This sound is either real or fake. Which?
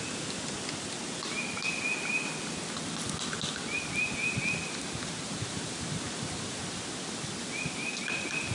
real